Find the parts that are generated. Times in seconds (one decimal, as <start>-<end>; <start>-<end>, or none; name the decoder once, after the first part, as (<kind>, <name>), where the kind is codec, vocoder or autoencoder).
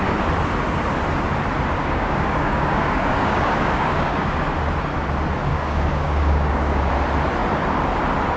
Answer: 1.8-4.5 (codec, DAC); 5.5-6.9